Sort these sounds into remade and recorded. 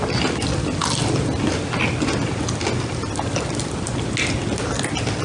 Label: recorded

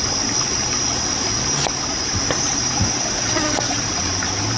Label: recorded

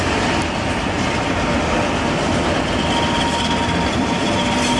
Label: recorded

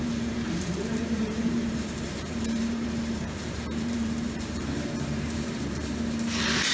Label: remade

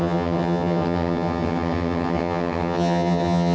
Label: remade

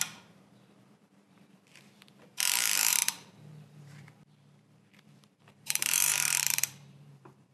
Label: remade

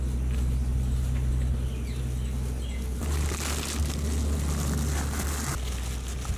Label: recorded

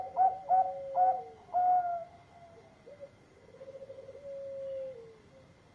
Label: recorded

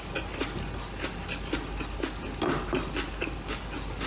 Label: recorded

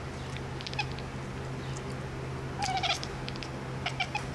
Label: recorded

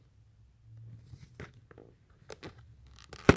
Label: recorded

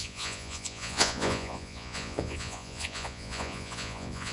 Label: remade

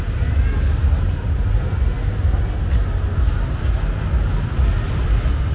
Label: recorded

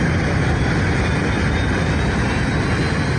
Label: recorded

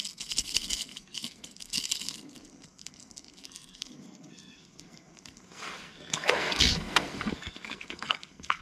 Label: remade